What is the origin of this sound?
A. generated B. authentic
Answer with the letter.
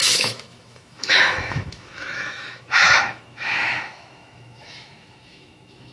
A